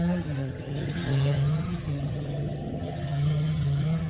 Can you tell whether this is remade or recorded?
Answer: remade